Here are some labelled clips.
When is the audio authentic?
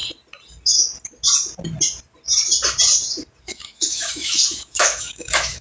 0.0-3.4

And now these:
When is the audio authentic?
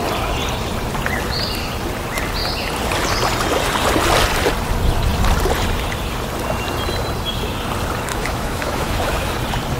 0.0-8.1; 9.3-9.8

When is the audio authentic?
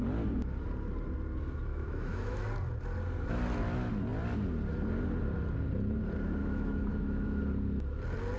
0.0-1.7; 2.4-6.4; 7.4-8.4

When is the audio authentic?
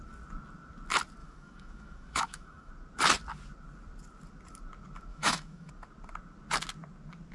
0.0-1.2; 2.7-5.1; 5.7-7.3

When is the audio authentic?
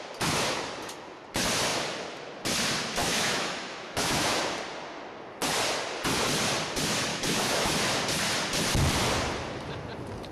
0.0-3.0; 4.4-7.1; 7.7-10.3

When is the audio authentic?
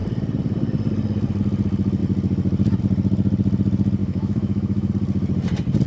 0.0-4.0; 4.9-5.9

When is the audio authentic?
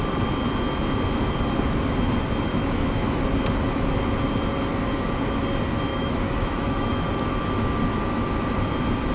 0.0-2.5; 3.2-5.9; 7.4-9.1